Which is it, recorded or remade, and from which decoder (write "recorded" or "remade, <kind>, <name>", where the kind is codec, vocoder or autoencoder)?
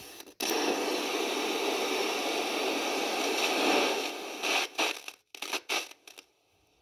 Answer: recorded